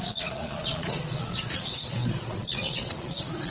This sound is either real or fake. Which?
fake